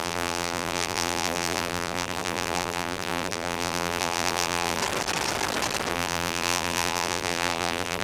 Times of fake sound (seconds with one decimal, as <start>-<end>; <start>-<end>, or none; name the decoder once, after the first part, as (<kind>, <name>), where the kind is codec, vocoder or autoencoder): 0.0-4.8 (vocoder, BigVGAN v2); 5.9-8.0